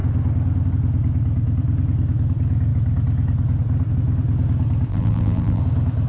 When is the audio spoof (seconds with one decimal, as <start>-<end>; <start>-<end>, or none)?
4.9-5.6